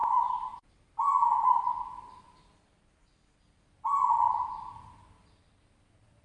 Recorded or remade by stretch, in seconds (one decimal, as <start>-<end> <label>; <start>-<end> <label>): 0.0-0.7 remade; 0.7-6.2 recorded